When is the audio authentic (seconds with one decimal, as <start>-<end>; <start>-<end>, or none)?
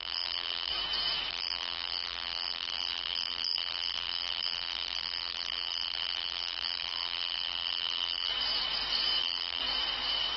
0.7-1.3; 8.3-9.2; 9.6-10.4